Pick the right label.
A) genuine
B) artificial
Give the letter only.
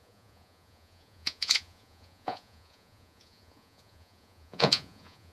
B